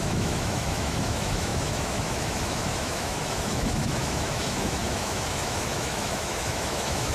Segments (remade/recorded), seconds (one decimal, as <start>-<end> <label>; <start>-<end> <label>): 0.0-7.1 remade